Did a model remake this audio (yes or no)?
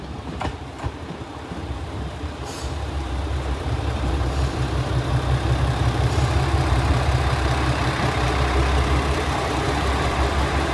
yes